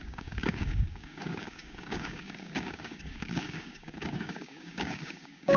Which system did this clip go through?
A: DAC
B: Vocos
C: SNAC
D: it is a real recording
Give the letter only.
A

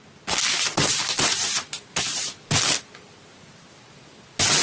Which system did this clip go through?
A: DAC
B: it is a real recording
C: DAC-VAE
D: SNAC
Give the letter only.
B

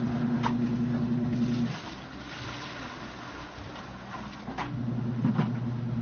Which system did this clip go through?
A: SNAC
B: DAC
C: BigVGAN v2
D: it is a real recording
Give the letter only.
D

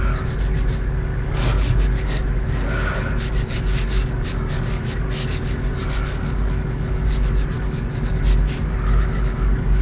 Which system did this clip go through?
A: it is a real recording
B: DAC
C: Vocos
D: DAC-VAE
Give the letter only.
B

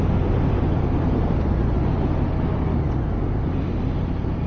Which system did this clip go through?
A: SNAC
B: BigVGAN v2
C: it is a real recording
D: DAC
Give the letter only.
C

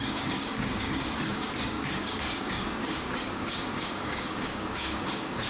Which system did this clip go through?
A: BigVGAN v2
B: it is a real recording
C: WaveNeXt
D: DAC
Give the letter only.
D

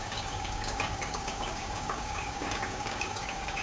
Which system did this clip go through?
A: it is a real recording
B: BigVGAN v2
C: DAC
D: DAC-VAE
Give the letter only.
C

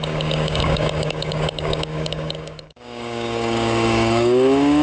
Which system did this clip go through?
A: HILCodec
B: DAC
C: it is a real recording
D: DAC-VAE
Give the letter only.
B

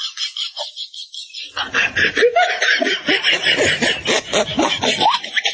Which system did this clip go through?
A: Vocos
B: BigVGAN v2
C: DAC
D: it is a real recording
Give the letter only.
D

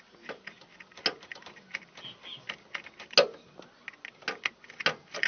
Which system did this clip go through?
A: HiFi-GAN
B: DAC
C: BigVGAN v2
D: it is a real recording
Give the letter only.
D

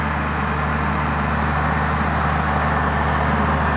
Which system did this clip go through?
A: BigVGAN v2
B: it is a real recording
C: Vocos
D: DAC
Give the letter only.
B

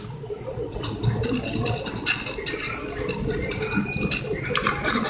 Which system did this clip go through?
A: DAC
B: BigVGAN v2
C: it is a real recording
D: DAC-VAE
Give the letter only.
C